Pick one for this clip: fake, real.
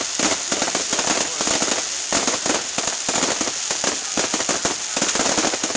real